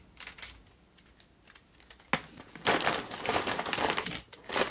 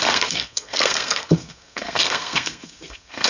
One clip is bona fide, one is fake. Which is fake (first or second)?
second